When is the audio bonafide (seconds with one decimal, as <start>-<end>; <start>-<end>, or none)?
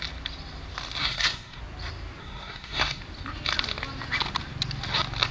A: 0.0-1.0; 1.6-2.2; 3.0-5.3